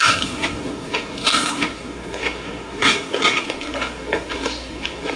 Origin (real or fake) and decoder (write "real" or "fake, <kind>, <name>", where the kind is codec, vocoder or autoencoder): fake, codec, SNAC